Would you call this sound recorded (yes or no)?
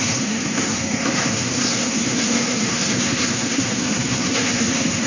no